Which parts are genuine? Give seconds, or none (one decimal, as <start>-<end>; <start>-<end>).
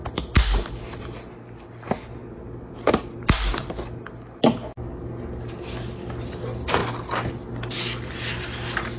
0.0-9.0